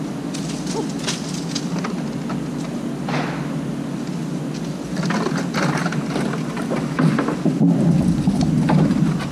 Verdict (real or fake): real